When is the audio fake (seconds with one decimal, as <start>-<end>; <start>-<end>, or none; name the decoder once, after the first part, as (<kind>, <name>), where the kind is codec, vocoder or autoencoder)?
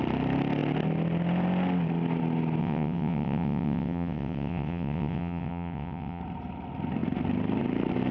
2.6-6.2 (vocoder, WaveNeXt)